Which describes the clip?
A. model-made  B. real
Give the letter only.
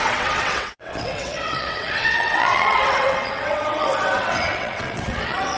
A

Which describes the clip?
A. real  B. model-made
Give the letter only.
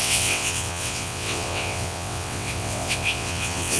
B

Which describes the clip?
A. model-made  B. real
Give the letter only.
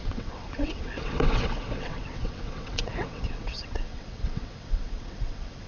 A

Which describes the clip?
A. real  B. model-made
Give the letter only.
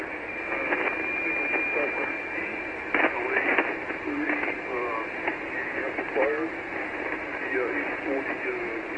A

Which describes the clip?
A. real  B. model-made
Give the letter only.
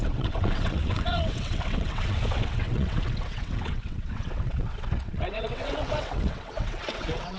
B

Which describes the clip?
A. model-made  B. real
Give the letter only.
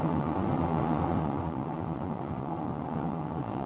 A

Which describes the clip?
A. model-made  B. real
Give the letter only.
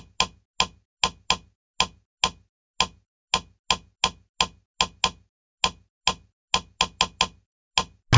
B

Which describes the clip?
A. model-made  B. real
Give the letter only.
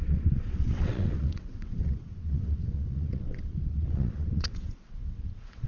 A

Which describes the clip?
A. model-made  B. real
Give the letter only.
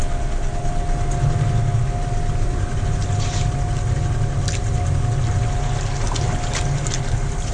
B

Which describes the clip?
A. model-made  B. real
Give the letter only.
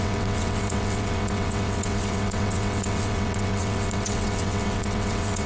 A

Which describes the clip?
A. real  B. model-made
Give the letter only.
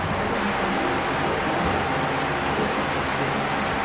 A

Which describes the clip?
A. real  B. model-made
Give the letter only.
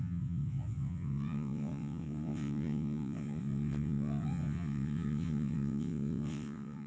B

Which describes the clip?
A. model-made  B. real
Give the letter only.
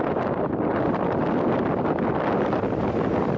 B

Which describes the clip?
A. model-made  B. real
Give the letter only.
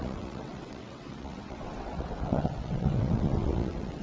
A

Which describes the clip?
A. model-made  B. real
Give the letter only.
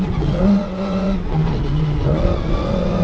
A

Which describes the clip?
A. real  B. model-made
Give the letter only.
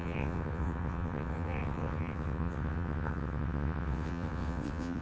B